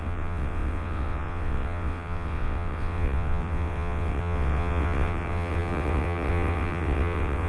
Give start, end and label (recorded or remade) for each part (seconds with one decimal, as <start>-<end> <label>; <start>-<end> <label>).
0.0-7.5 remade